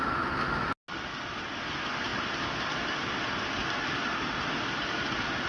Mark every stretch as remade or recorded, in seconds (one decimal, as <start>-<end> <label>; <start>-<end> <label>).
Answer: 0.0-5.5 recorded